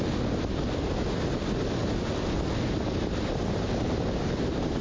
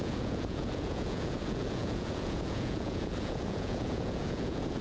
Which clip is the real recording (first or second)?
first